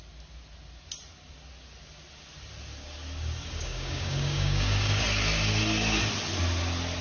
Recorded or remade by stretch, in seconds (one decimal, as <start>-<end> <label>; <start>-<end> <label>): 0.0-3.6 recorded; 3.6-5.0 remade; 5.0-7.0 recorded